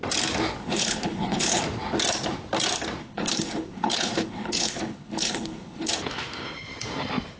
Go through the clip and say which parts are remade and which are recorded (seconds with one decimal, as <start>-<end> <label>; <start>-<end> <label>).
0.0-0.6 recorded; 0.6-1.6 remade; 1.6-3.0 recorded; 3.0-5.9 remade; 5.9-7.4 recorded